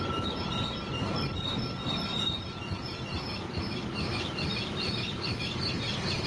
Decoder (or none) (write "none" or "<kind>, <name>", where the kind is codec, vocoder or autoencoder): none